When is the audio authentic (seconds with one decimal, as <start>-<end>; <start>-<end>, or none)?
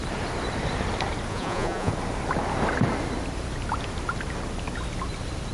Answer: 0.0-1.3; 1.9-5.5